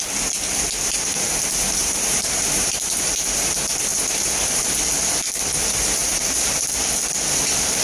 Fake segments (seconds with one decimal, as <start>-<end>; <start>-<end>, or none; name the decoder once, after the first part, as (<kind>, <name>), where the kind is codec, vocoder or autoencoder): 1.8-2.9 (vocoder, BigVGAN v2); 6.0-6.5